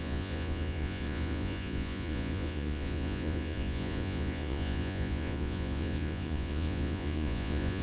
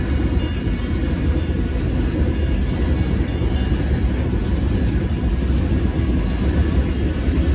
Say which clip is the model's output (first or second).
first